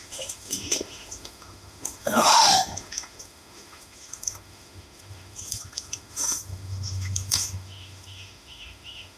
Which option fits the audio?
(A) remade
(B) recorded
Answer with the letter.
A